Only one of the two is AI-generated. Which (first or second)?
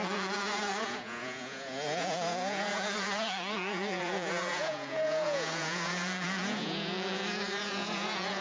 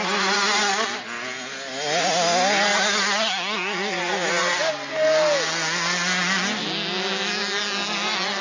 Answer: first